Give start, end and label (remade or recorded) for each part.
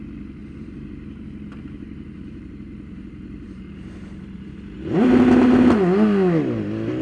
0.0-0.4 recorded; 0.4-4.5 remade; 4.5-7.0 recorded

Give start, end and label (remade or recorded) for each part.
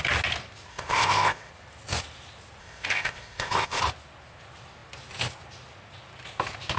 0.0-0.7 recorded; 0.7-1.5 remade; 1.5-2.6 recorded; 2.6-3.8 remade; 3.8-6.8 recorded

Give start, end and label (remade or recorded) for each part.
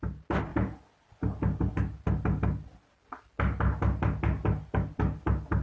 0.0-5.6 recorded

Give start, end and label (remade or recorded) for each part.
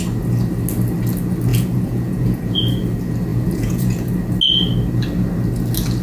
0.0-1.5 recorded; 1.5-2.6 remade; 2.6-3.3 recorded; 3.3-4.1 remade; 4.1-6.0 recorded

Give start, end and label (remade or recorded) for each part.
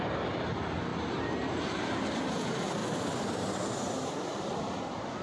0.0-2.8 recorded; 2.8-4.8 remade; 4.8-5.2 recorded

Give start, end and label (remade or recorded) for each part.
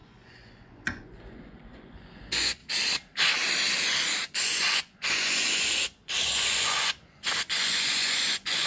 0.0-2.6 remade; 2.6-4.2 recorded; 4.2-8.7 remade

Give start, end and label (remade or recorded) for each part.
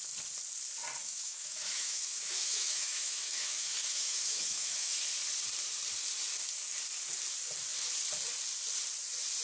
0.0-1.0 recorded; 1.0-5.0 remade; 5.0-9.4 recorded